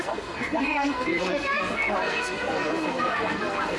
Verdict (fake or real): fake